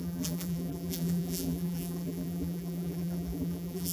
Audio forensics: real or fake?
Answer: fake